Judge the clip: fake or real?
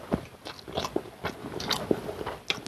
real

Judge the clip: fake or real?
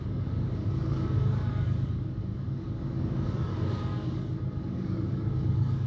fake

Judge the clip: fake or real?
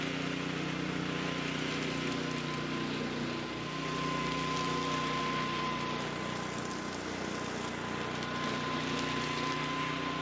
real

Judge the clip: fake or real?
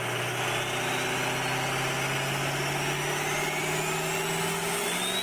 real